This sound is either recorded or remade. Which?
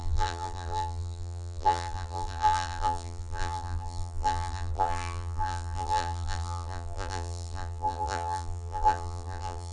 remade